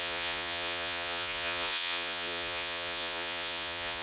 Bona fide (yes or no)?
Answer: no